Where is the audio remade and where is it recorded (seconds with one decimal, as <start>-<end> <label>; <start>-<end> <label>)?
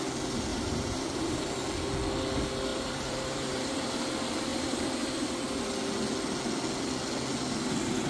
0.0-0.5 recorded; 0.5-1.4 remade; 1.4-2.7 recorded; 2.7-3.7 remade; 3.7-4.5 recorded; 4.5-5.6 remade; 5.6-8.1 recorded